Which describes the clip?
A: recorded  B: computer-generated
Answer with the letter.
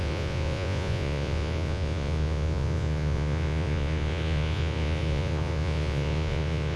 B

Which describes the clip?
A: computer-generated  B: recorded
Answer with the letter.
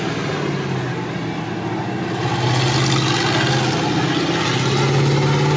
B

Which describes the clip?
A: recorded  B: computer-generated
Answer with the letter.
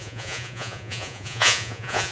B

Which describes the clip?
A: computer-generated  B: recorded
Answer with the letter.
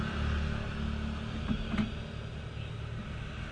B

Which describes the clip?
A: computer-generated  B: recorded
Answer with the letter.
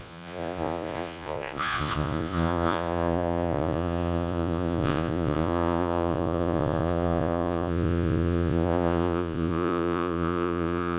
A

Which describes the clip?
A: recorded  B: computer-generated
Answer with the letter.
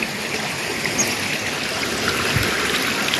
A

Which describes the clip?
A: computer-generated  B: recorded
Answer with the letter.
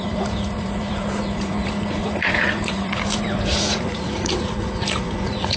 A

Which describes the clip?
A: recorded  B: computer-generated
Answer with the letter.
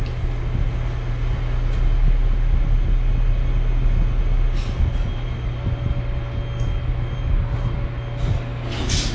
A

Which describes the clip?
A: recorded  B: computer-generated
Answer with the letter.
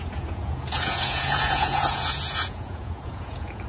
B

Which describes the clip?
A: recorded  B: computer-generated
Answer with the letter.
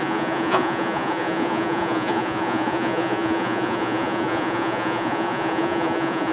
B